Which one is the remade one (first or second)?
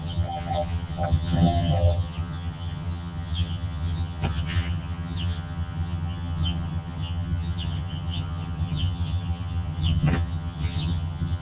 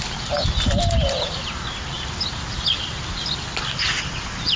first